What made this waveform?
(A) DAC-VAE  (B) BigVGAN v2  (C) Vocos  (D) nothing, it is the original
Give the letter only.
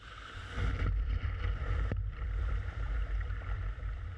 B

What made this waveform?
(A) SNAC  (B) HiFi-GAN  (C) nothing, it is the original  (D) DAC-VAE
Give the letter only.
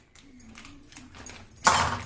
C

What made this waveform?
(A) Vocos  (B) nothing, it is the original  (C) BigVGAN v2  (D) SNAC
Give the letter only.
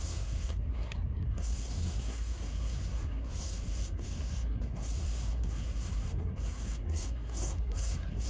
D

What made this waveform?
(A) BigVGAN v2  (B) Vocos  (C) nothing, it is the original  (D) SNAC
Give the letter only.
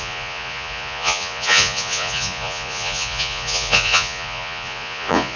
B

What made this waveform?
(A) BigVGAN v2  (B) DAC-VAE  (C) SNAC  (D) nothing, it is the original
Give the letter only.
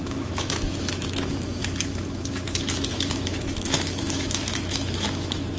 B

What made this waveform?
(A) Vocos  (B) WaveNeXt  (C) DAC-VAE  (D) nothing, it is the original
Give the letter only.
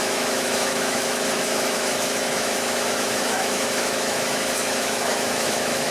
C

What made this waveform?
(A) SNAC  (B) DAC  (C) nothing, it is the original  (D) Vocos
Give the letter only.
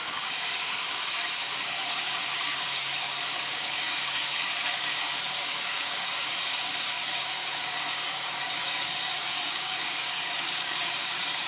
B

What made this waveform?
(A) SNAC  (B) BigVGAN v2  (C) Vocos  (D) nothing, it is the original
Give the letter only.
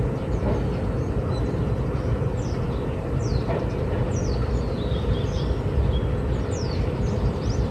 B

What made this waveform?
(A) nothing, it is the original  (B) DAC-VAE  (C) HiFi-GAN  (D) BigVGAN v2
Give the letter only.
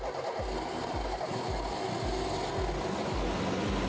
A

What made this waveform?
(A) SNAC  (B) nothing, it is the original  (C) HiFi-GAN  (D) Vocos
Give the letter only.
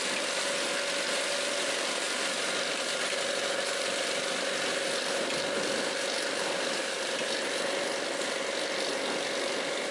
B